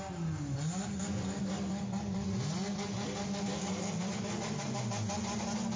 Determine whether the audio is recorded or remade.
recorded